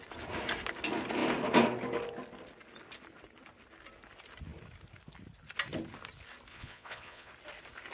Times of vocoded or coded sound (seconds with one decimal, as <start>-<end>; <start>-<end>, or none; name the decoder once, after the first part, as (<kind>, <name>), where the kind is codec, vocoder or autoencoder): 6.5-7.3 (vocoder, Vocos)